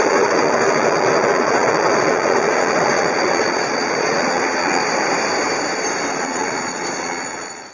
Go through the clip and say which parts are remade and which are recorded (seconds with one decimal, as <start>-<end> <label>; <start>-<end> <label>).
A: 0.0-4.8 remade; 4.8-6.1 recorded; 6.1-7.7 remade